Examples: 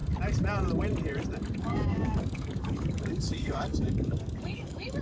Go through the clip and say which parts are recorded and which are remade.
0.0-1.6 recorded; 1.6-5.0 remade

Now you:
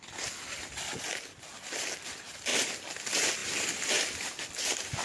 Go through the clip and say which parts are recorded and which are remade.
0.0-2.5 recorded; 2.5-3.0 remade; 3.0-3.4 recorded; 3.4-5.0 remade

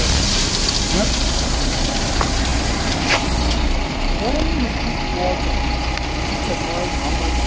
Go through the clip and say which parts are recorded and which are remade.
0.0-7.5 recorded

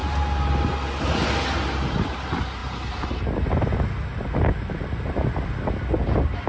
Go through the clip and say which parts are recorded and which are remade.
0.0-6.5 recorded

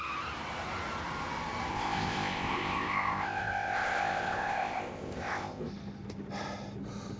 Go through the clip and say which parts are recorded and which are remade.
0.0-1.7 recorded; 1.7-5.7 remade; 5.7-7.2 recorded

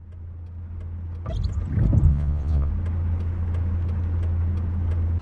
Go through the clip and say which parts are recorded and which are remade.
0.0-2.1 recorded; 2.1-2.7 remade; 2.7-5.2 recorded